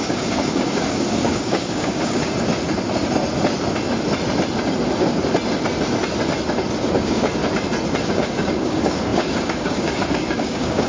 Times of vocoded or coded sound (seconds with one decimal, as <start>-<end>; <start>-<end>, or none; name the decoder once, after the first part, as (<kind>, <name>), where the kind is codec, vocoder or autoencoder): 0.0-2.3 (codec, DAC); 6.9-7.4; 8.0-10.9